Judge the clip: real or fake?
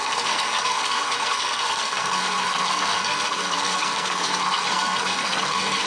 fake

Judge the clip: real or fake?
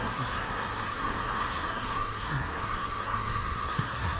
fake